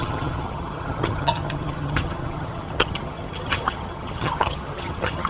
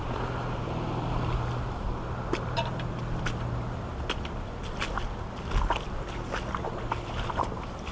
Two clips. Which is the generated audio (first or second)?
first